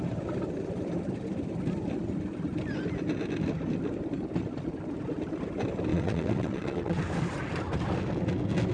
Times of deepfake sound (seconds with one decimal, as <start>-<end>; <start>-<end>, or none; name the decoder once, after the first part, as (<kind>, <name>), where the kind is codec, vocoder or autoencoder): 5.9-7.0 (vocoder, WaveNeXt)